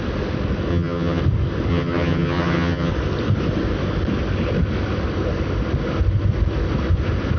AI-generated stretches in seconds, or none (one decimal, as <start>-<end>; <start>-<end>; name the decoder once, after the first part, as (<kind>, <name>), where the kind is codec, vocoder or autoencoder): 0.7-1.2 (vocoder, HiFi-GAN); 1.7-2.9